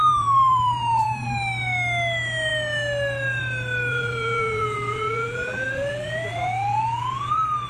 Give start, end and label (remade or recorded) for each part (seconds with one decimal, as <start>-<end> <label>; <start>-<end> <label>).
0.0-1.3 remade; 1.3-3.9 recorded; 3.9-7.3 remade; 7.3-7.7 recorded